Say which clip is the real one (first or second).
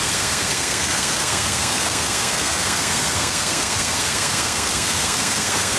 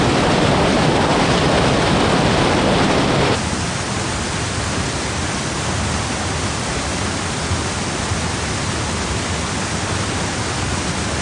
second